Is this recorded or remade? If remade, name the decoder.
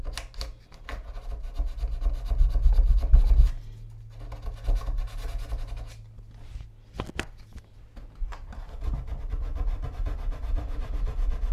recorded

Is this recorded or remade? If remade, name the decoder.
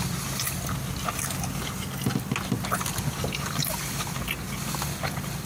recorded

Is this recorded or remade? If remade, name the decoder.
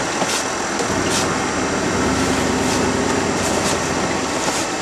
recorded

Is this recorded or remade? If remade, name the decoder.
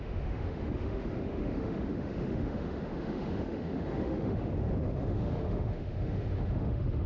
remade, autoencoder, DAC-VAE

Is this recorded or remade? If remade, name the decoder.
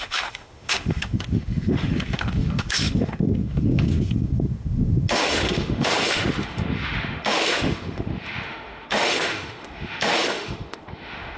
remade, autoencoder, DAC-VAE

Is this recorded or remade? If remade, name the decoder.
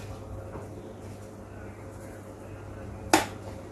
recorded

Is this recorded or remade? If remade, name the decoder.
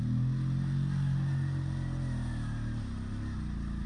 recorded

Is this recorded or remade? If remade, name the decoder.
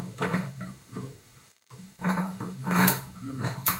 remade, autoencoder, DAC-VAE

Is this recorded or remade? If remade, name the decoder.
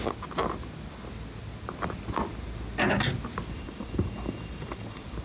recorded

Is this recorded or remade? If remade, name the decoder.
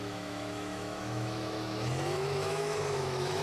remade, autoencoder, DAC-VAE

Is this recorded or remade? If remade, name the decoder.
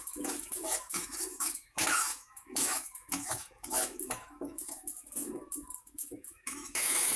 remade, autoencoder, DAC-VAE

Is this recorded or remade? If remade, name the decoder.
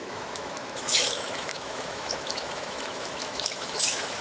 remade, autoencoder, DAC-VAE